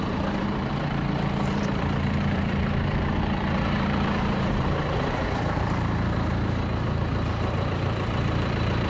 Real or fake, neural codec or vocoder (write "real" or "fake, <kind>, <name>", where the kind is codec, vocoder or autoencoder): fake, vocoder, BigVGAN v2